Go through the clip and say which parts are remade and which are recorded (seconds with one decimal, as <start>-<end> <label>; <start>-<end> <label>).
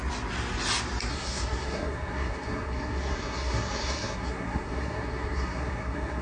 0.0-1.1 recorded; 1.1-6.2 remade